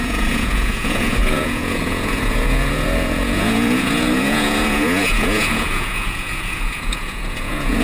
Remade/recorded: remade